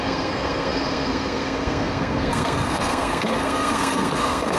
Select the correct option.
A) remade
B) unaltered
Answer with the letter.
A